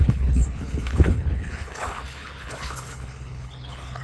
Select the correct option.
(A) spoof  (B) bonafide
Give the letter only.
A